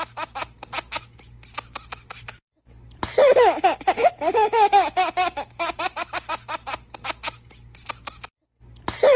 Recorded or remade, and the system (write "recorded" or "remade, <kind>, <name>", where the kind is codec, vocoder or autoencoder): recorded